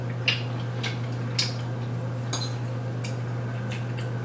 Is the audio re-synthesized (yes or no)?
no